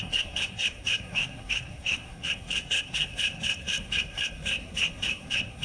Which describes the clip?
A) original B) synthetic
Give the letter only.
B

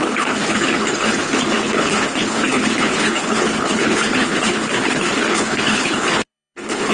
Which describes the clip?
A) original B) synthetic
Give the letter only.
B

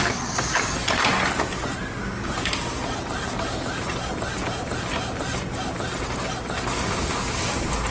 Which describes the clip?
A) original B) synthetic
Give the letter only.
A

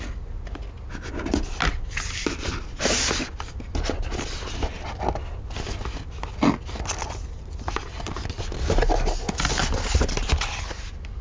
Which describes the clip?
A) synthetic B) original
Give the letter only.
B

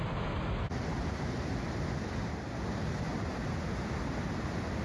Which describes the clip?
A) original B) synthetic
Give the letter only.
A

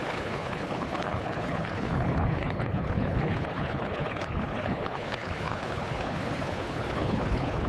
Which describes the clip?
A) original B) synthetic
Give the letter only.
B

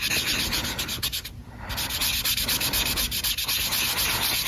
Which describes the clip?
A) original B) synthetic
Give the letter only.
A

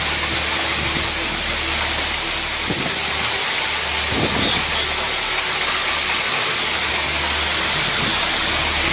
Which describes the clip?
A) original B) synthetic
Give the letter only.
A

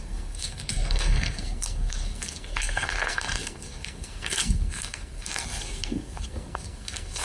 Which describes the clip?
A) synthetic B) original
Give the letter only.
A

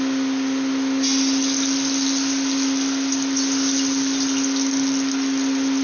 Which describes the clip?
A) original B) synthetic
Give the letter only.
A